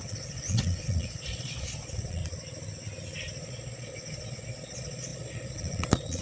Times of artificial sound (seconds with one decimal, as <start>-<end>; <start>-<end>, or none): 0.0-2.2; 3.4-6.2